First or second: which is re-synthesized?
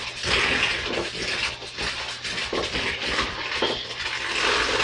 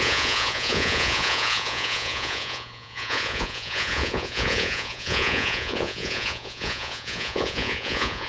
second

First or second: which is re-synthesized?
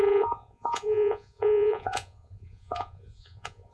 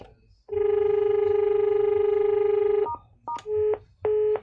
first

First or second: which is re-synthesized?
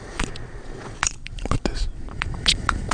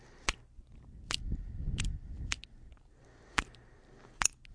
first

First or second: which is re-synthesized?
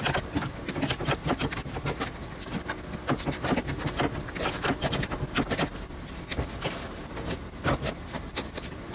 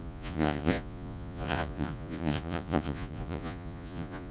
second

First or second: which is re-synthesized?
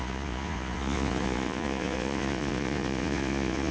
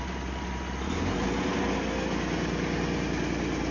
first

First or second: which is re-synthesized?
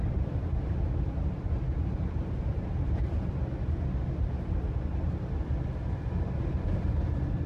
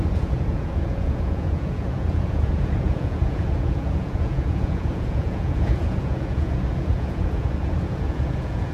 second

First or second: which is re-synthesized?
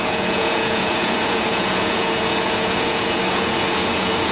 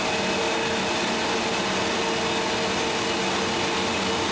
first